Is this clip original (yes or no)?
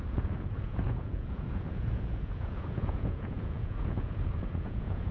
no